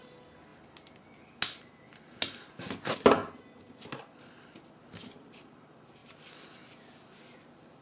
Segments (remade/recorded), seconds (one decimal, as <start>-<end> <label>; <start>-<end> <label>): 0.0-7.8 recorded